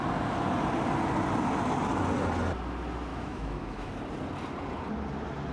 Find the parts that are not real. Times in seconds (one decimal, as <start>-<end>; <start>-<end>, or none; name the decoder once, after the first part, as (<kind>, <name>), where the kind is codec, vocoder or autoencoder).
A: 3.1-3.9 (autoencoder, DAC-VAE)